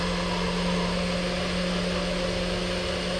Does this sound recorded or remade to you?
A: recorded